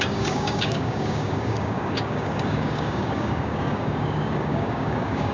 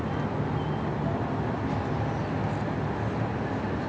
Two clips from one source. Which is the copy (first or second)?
first